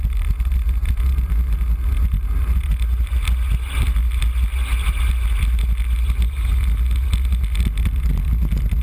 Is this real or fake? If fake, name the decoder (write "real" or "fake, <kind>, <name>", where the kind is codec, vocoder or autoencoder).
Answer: real